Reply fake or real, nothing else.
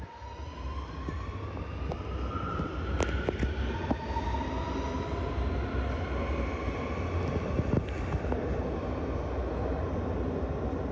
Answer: real